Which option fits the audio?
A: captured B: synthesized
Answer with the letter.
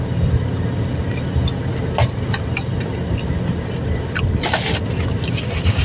A